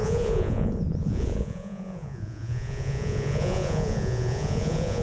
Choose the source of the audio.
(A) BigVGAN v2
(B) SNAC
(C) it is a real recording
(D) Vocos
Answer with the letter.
D